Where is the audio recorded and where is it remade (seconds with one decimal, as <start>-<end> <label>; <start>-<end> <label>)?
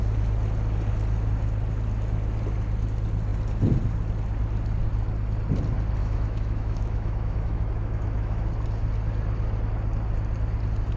0.0-6.0 recorded; 6.0-8.5 remade; 8.5-11.0 recorded